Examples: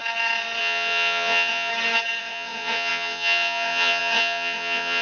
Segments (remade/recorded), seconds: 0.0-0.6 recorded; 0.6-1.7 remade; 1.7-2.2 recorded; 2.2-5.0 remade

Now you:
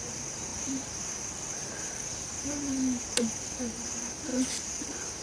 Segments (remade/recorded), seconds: 0.0-5.2 remade

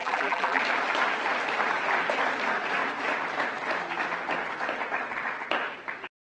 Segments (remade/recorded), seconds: 0.0-0.6 remade; 0.6-6.4 recorded

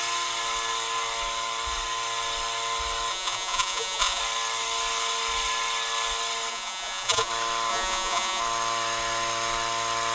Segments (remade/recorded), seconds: 0.0-3.1 recorded; 3.1-4.2 remade; 4.2-6.5 recorded; 6.5-7.3 remade; 7.3-7.7 recorded; 7.7-8.4 remade; 8.4-10.1 recorded

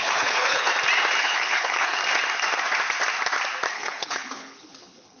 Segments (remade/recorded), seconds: 0.0-0.7 remade; 0.7-1.2 recorded; 1.2-2.0 remade; 2.0-3.7 recorded; 3.7-5.2 remade